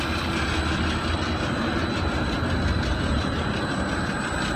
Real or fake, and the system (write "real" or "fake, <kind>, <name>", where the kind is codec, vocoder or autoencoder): real